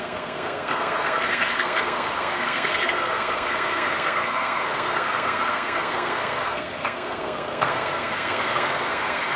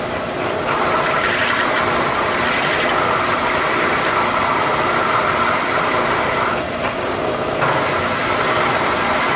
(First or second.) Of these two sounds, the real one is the second